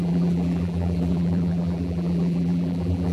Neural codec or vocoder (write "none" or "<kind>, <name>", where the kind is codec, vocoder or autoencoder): vocoder, BigVGAN v2